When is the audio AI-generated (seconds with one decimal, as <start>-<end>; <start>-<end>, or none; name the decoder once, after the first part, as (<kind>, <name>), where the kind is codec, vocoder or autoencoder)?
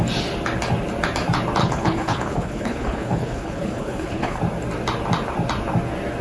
1.6-4.4 (codec, HILCodec)